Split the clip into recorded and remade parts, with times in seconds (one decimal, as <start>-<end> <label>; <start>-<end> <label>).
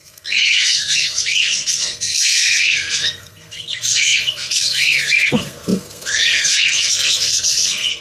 0.0-8.0 remade